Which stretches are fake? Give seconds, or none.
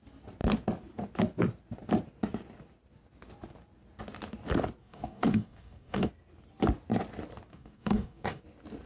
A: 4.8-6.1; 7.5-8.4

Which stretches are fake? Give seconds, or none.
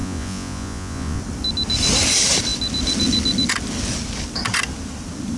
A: 0.0-1.2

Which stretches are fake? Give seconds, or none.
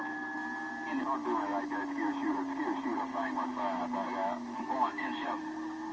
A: 1.2-2.3; 3.2-3.8; 4.2-5.4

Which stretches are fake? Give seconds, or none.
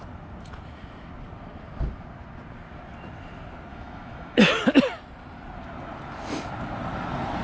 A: 3.7-4.6